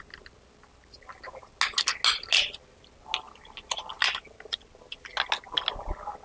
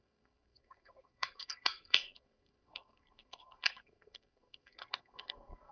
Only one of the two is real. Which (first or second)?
first